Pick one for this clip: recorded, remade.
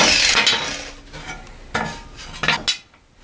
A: recorded